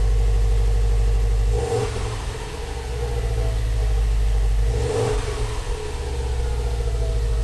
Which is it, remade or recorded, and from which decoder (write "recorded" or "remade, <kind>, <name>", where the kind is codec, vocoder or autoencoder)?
recorded